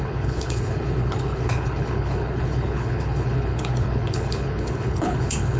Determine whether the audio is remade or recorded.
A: remade